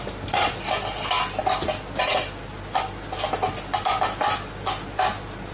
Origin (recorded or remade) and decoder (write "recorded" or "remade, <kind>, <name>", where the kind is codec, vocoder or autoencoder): remade, vocoder, BigVGAN v2